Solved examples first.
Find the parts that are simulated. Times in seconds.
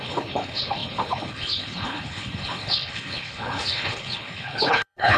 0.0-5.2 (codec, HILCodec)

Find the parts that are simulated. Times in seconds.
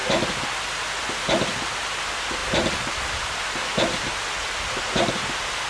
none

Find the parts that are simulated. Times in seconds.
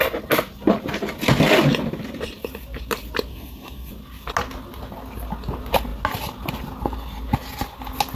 3.3-3.9 (codec, SNAC)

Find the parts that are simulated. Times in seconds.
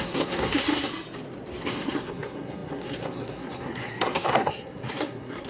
0.0-0.9 (codec, SNAC); 1.6-5.5